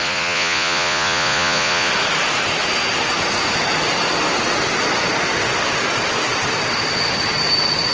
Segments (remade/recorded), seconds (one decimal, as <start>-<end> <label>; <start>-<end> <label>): 0.0-1.9 remade; 1.9-7.9 recorded